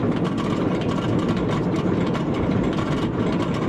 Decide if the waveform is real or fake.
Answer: real